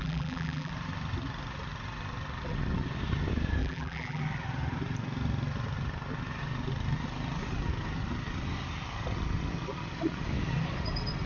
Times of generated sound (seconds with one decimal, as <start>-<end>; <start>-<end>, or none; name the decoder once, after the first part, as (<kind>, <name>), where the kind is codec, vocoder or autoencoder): 0.0-0.7 (vocoder, BigVGAN v2); 3.6-4.2